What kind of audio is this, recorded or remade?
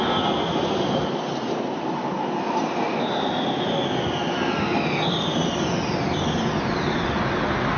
recorded